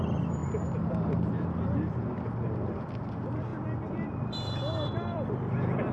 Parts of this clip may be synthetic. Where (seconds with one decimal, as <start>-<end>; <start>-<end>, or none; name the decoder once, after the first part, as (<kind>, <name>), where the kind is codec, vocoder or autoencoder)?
0.0-5.9 (vocoder, BigVGAN v2)